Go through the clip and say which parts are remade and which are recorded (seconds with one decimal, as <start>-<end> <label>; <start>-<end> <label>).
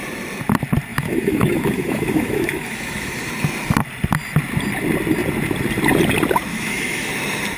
0.0-0.9 recorded; 0.9-3.3 remade; 3.3-6.5 recorded; 6.5-7.1 remade; 7.1-7.6 recorded